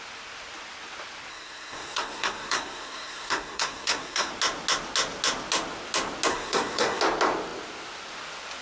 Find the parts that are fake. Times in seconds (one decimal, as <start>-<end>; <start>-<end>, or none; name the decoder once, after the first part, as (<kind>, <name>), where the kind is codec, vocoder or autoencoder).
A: 1.3-4.3 (codec, SNAC); 6.3-7.0